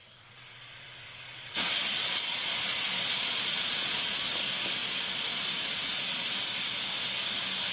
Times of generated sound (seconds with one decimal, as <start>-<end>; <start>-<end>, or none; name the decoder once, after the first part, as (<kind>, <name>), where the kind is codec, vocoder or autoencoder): 0.0-4.2 (vocoder, Vocos); 4.8-6.3

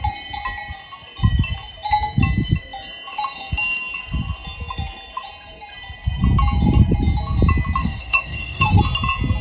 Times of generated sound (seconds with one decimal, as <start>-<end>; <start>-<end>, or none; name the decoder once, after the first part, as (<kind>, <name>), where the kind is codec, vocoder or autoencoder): 7.8-8.8 (codec, SNAC)

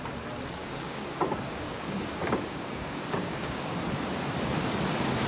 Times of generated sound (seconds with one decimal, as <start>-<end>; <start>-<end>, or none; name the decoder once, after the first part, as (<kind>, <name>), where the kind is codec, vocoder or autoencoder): 0.6-3.8 (codec, DAC)

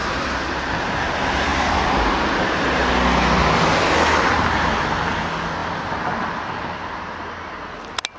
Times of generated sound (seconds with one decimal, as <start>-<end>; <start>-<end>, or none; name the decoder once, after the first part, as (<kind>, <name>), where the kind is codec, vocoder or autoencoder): none

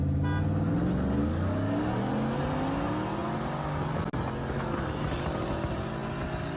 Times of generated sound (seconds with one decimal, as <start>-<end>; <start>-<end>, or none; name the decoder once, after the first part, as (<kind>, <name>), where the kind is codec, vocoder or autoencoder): 1.2-1.8 (codec, DAC)

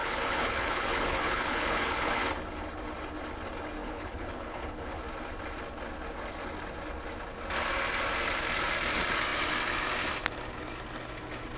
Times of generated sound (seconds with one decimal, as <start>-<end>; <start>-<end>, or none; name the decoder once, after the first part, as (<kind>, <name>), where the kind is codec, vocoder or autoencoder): 0.0-2.2 (codec, HILCodec); 3.8-5.0